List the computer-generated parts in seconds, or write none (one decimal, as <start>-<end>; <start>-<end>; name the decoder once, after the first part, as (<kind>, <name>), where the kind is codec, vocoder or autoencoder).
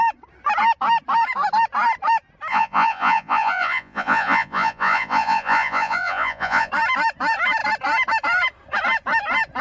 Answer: 2.5-6.7 (vocoder, Vocos)